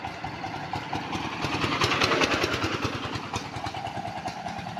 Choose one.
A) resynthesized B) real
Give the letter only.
B